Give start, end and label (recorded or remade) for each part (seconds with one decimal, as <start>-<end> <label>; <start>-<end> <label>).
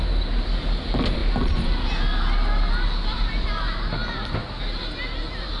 0.0-5.6 recorded